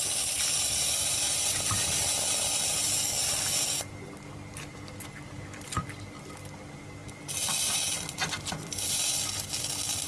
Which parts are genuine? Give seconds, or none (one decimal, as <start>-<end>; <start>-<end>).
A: 0.0-10.1